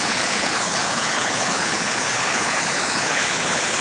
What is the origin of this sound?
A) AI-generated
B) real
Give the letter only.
A